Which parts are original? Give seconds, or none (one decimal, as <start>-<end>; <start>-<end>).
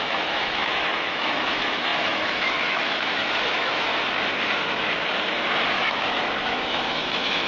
3.9-6.4